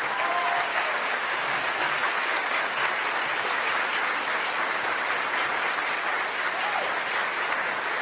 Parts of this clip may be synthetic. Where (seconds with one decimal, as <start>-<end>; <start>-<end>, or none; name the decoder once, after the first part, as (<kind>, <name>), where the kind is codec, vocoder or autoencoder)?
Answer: 0.7-2.9 (codec, DAC)